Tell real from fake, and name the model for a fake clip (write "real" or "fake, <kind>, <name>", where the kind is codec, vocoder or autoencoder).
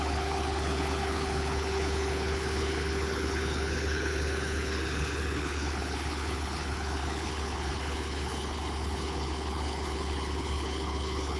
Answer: fake, codec, HILCodec